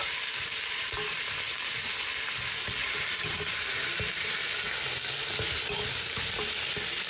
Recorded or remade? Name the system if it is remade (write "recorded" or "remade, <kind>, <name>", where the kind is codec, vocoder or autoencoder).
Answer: recorded